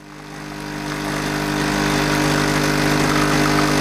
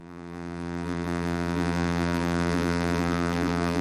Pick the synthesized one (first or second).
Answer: second